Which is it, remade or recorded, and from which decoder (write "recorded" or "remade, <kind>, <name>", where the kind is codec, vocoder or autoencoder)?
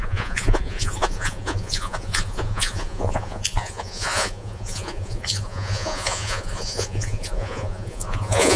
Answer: remade, vocoder, Vocos